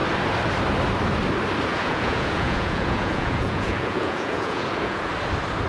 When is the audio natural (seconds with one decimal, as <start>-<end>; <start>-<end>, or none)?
0.0-1.7; 5.1-5.7